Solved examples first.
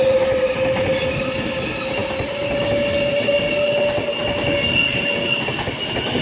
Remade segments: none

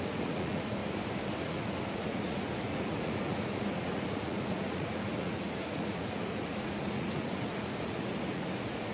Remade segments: 0.0-0.8 (vocoder, Vocos); 1.4-8.9